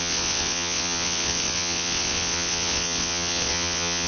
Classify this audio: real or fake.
fake